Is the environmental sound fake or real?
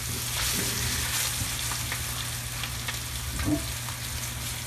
real